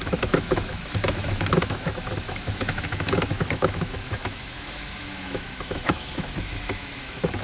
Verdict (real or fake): fake